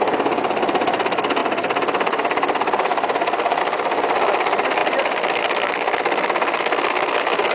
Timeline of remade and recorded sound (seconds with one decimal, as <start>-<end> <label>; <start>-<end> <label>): 0.0-1.4 recorded; 1.4-3.6 remade; 3.6-7.5 recorded